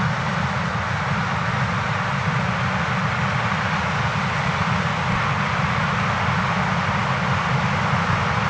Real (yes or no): yes